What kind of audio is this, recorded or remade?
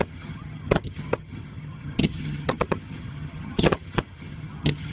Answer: remade